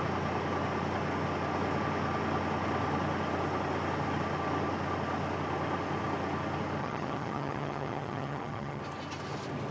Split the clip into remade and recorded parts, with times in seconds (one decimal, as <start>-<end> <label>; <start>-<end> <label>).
0.0-6.8 recorded; 6.8-8.8 remade; 8.8-9.7 recorded